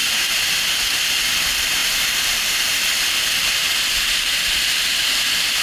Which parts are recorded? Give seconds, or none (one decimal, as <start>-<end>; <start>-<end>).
1.0-1.8; 4.9-5.6